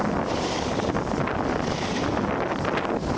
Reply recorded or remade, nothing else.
recorded